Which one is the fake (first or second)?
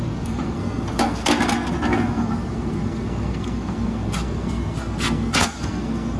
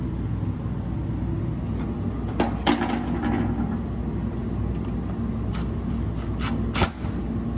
first